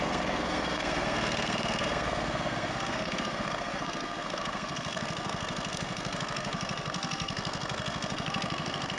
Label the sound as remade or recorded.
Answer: remade